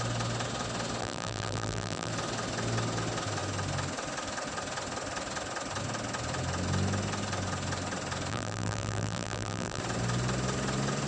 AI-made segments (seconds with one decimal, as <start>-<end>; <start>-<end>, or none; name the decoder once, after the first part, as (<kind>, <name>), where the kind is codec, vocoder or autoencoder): 1.0-2.1 (vocoder, BigVGAN v2); 8.3-9.8